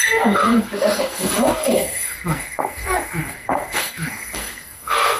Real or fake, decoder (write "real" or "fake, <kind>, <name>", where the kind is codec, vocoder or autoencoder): fake, codec, SNAC